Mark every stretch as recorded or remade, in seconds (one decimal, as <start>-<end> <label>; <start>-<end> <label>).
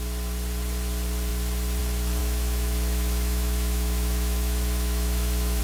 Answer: 0.0-2.2 recorded; 2.2-5.6 remade